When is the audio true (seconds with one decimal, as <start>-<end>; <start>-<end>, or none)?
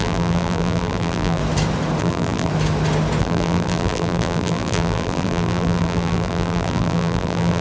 1.4-2.0; 2.5-3.2